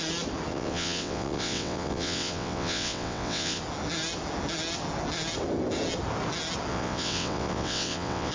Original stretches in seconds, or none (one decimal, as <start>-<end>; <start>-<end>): 0.0-0.5; 3.6-6.7